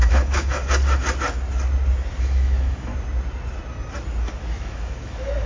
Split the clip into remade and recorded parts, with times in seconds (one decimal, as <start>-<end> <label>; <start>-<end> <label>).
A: 0.0-0.6 remade; 0.6-2.2 recorded; 2.2-2.9 remade; 2.9-4.5 recorded; 4.5-5.5 remade